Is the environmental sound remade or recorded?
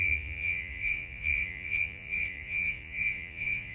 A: remade